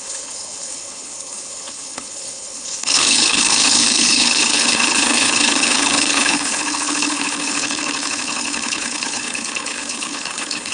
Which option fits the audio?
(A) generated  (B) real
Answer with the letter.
A